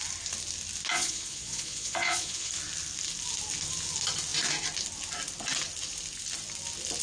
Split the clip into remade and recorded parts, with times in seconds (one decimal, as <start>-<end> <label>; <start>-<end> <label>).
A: 0.0-0.9 recorded; 0.9-2.5 remade; 2.5-7.0 recorded

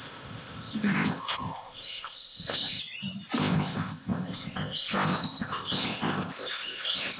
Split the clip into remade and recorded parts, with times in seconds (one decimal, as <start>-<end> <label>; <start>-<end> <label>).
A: 0.0-2.8 remade; 2.8-3.4 recorded; 3.4-7.2 remade

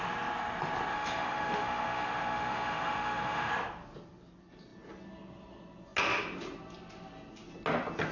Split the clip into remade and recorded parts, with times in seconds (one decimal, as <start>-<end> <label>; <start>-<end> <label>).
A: 0.0-0.9 recorded; 0.9-3.5 remade; 3.5-8.1 recorded

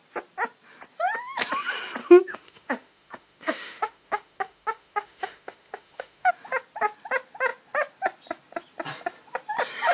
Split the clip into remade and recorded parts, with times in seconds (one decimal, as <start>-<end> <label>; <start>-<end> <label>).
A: 0.0-2.0 recorded; 2.0-6.3 remade; 6.3-9.9 recorded

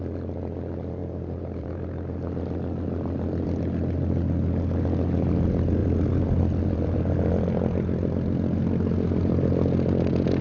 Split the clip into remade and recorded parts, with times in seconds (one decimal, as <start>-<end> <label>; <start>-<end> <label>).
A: 0.0-1.0 recorded; 1.0-1.7 remade; 1.7-5.8 recorded; 5.8-7.3 remade; 7.3-10.4 recorded

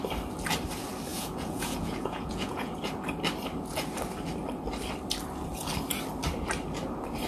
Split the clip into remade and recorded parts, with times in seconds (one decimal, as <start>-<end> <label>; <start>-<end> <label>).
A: 0.0-1.1 recorded; 1.1-2.7 remade; 2.7-7.3 recorded